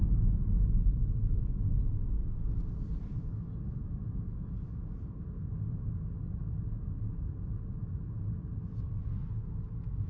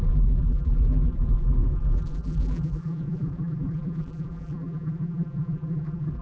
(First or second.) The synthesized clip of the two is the second